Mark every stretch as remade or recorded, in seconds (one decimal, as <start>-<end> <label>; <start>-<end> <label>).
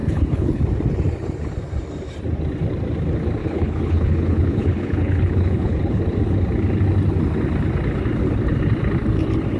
0.0-0.6 remade; 0.6-3.4 recorded; 3.4-6.0 remade; 6.0-9.6 recorded